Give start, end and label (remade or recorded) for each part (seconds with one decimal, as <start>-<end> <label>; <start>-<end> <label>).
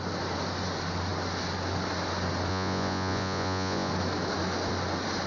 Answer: 0.0-2.5 recorded; 2.5-3.9 remade; 3.9-5.3 recorded